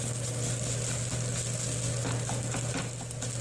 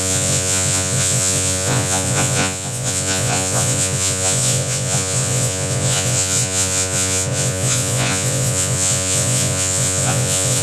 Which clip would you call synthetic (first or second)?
second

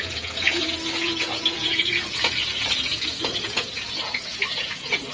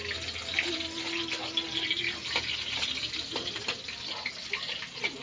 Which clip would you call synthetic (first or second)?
first